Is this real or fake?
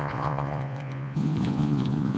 fake